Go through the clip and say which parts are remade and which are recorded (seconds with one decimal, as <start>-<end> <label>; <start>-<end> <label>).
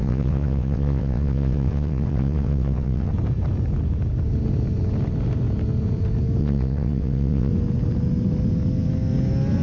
0.0-3.1 remade; 3.1-6.4 recorded; 6.4-7.5 remade; 7.5-9.6 recorded